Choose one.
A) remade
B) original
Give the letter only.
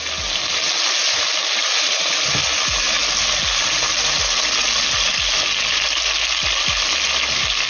B